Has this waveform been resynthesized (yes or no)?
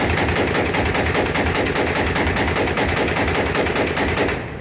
no